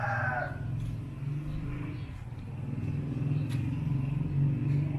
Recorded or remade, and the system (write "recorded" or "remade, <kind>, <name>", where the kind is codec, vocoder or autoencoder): recorded